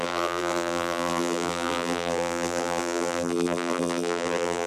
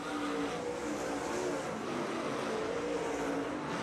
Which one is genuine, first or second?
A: second